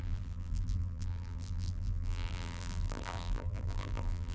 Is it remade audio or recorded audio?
remade